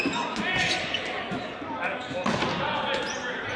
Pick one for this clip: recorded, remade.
recorded